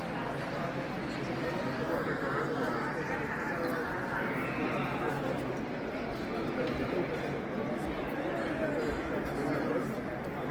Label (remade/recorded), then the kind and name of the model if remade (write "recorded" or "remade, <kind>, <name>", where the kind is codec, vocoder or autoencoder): recorded